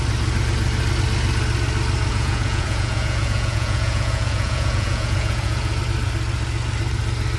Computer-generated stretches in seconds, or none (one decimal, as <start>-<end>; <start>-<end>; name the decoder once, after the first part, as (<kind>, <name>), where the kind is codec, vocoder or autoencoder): 2.1-5.7 (vocoder, Vocos)